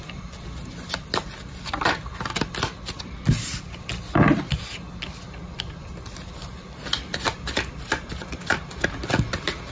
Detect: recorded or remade recorded